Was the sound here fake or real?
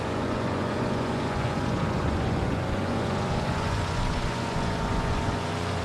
fake